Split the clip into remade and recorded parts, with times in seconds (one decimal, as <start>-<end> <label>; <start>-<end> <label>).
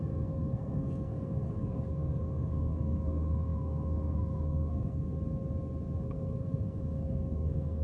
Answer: 0.0-5.1 remade; 5.1-6.0 recorded; 6.0-7.8 remade